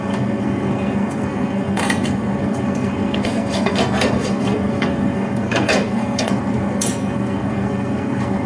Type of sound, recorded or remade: remade